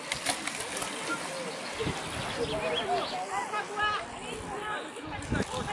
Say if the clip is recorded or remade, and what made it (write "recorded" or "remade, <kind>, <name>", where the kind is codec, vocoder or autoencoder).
recorded